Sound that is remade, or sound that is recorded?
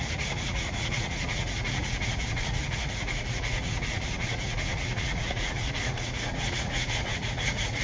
remade